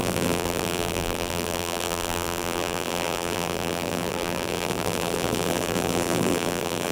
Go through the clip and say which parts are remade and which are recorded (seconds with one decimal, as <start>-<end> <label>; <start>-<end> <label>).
0.0-6.9 remade